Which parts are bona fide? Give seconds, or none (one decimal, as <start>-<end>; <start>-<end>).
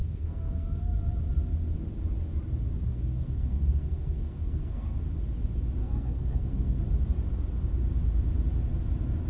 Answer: 1.0-2.9; 5.0-5.8; 6.8-9.3